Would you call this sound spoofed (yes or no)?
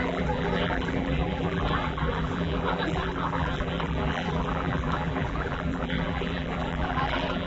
yes